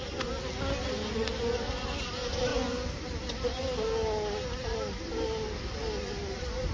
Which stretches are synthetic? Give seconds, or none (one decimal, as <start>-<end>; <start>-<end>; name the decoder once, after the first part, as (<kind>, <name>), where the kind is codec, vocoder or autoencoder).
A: none

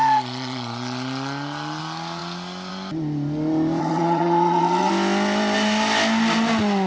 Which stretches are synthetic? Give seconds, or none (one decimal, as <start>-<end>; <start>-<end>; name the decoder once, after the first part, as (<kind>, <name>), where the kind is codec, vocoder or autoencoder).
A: 3.8-4.9 (vocoder, HiFi-GAN)